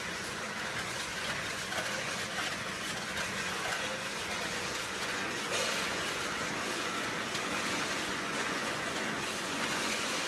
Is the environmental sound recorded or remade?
remade